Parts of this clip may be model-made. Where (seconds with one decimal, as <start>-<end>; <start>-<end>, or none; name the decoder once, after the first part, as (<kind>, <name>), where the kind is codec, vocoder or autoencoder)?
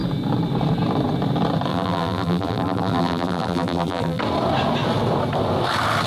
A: 1.7-4.2 (vocoder, BigVGAN v2)